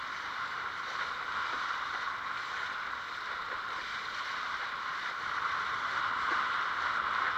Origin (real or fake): fake